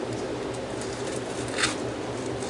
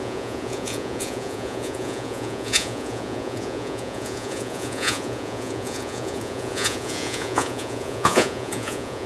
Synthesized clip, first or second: second